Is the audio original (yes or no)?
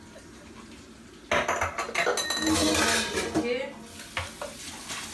yes